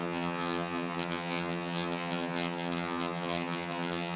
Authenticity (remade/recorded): remade